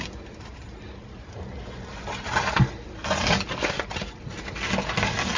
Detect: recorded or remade recorded